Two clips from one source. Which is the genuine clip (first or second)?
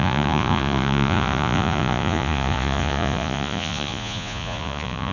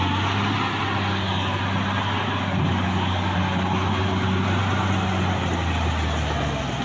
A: second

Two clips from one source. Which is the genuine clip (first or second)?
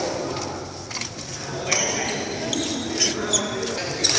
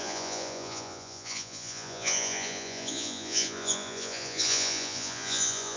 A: first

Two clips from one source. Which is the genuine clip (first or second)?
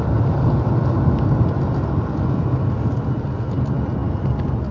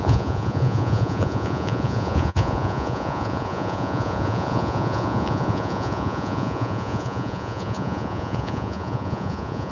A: first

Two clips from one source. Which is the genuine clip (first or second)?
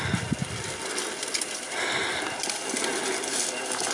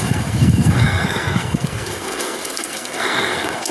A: first